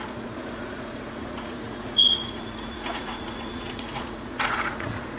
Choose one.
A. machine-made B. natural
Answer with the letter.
A